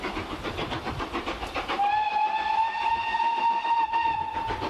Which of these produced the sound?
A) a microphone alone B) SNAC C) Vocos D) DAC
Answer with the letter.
A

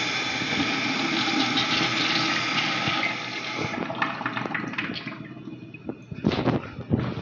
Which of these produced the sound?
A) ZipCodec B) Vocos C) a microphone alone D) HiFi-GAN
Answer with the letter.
C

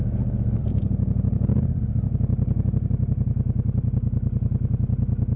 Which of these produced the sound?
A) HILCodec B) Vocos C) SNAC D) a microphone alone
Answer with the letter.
D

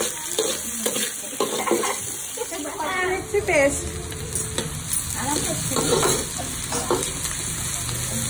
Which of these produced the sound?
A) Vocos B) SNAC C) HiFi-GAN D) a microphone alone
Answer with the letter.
D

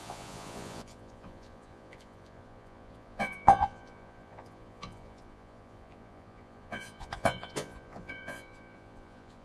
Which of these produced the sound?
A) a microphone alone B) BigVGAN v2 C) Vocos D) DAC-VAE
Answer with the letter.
C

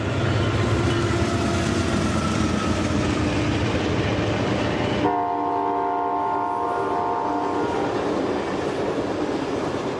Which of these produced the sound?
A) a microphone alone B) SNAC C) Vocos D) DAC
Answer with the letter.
A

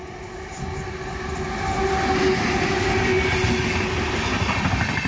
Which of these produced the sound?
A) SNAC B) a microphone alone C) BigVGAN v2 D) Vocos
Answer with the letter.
B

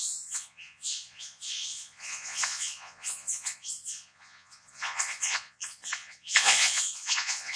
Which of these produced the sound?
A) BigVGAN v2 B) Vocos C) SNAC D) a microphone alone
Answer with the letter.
B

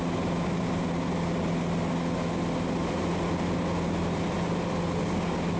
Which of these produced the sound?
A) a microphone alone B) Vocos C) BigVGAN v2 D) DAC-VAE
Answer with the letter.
A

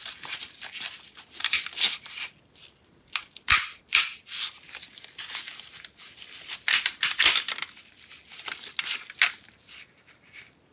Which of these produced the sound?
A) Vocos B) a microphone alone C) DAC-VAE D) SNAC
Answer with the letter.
B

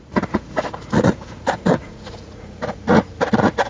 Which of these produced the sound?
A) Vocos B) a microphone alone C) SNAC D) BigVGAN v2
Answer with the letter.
A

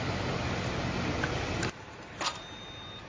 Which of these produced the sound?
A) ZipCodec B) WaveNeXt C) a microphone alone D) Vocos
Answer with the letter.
C